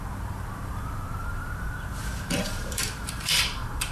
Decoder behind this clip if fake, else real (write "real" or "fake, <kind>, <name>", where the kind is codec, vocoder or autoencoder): fake, vocoder, BigVGAN v2